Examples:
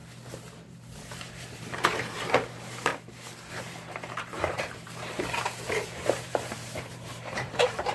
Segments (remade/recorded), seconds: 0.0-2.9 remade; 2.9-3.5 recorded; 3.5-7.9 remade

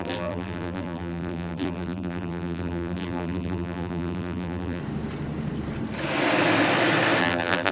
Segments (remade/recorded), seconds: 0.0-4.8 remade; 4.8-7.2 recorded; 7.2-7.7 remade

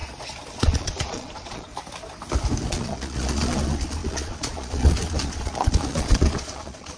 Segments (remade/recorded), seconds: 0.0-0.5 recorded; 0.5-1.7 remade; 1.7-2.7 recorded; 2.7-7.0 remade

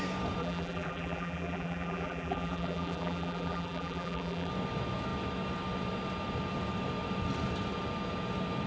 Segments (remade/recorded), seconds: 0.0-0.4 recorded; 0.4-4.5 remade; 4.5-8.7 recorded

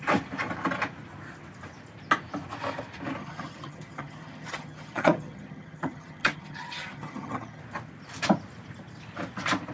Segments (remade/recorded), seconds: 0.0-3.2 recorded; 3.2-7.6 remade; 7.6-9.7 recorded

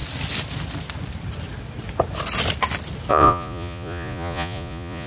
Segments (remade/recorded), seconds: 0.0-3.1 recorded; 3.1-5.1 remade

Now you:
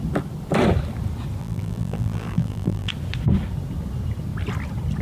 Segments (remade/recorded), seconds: 0.0-1.4 recorded; 1.4-2.9 remade; 2.9-5.0 recorded

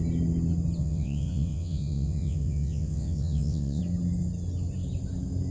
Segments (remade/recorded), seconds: 0.0-0.8 recorded; 0.8-3.8 remade; 3.8-5.5 recorded